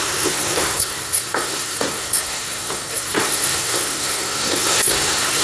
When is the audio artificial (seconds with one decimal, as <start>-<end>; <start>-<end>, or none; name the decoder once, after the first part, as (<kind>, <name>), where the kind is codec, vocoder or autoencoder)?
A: 0.0-5.4 (codec, SNAC)

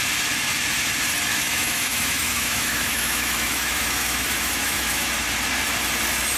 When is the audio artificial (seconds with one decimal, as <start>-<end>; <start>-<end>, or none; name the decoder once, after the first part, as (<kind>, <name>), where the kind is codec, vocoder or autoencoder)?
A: 1.3-5.1 (autoencoder, DAC-VAE)

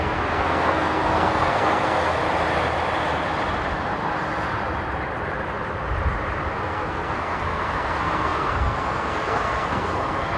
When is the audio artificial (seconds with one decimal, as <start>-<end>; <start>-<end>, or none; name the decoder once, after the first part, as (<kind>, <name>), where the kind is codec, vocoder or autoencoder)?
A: 0.0-2.2 (codec, SNAC); 6.5-10.4

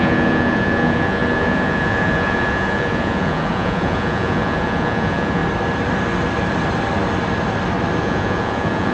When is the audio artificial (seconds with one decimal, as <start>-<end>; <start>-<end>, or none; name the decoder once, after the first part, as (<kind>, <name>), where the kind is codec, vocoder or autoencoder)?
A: 0.0-5.4 (vocoder, Vocos); 8.0-8.9